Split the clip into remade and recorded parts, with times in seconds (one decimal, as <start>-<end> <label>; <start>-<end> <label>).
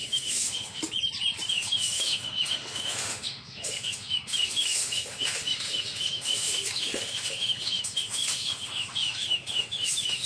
0.0-0.8 remade; 0.8-1.5 recorded; 1.5-10.3 remade